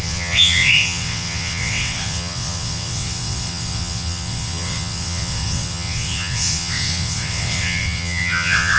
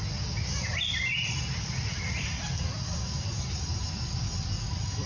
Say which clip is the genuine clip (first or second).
second